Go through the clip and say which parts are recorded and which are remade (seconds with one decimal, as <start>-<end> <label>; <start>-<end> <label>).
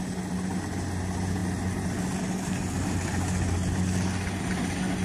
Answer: 0.0-5.0 recorded